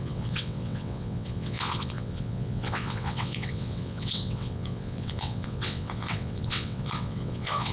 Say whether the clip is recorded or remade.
remade